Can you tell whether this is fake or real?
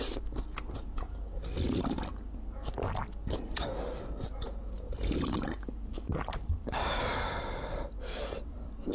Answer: real